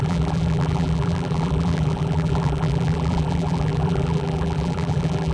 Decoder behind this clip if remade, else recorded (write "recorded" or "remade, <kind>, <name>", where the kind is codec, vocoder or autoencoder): remade, vocoder, BigVGAN v2